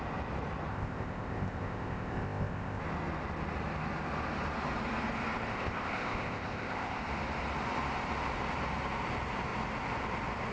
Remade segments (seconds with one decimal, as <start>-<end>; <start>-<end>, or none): 0.7-2.8; 5.5-7.0